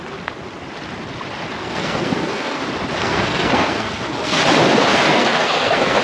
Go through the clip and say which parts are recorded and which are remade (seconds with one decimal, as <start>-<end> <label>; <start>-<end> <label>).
0.0-1.6 recorded; 1.6-2.6 remade; 2.6-3.0 recorded; 3.0-4.4 remade; 4.4-4.9 recorded; 4.9-6.0 remade